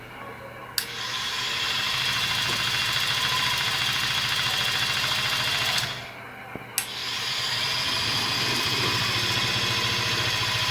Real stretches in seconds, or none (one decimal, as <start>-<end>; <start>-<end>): 0.0-7.0; 9.5-10.7